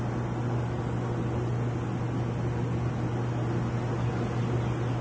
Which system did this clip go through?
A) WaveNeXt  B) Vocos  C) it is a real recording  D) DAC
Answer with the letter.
C